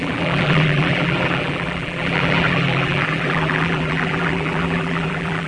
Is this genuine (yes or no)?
no